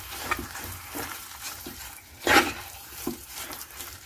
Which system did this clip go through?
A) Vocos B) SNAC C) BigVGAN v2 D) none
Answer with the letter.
C